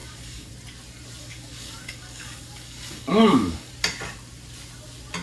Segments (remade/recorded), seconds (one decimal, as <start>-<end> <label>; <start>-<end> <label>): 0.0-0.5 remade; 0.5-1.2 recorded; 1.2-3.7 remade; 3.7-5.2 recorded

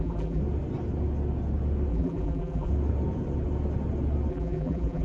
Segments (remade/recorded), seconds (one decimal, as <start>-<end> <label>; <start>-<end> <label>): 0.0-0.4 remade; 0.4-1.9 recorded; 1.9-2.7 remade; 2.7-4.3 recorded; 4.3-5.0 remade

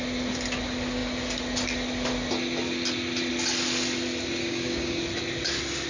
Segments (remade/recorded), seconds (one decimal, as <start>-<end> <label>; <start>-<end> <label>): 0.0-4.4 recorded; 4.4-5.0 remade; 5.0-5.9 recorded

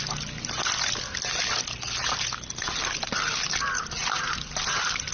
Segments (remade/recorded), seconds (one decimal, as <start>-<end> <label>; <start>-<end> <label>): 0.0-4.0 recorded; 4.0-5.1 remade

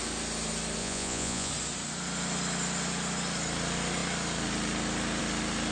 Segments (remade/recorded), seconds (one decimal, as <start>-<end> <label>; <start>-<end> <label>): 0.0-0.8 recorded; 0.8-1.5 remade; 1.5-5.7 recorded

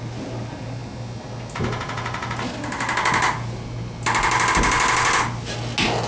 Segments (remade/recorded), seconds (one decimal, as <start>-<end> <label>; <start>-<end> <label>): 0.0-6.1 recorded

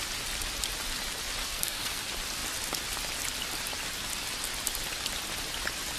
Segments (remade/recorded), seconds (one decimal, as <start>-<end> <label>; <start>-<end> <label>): 0.0-1.4 recorded; 1.4-2.0 remade; 2.0-6.0 recorded